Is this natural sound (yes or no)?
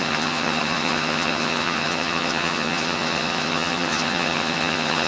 no